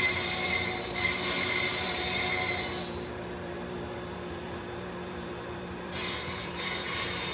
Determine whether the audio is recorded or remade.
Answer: remade